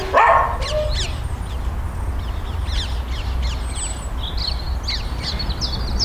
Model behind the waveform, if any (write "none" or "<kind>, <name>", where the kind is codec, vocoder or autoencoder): none